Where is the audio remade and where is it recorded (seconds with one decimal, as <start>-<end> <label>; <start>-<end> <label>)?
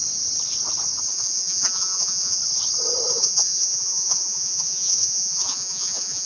0.0-1.1 recorded; 1.1-2.4 remade; 2.4-3.1 recorded; 3.1-6.3 remade